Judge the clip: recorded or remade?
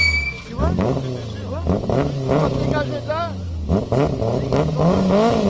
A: recorded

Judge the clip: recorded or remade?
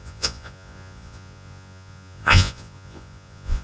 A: remade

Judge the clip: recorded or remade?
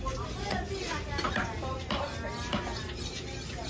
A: recorded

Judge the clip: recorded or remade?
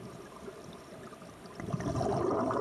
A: recorded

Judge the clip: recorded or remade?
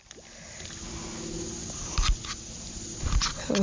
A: recorded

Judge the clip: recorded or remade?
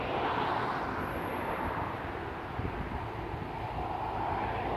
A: recorded